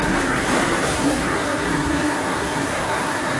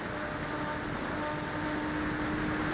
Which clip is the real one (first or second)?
second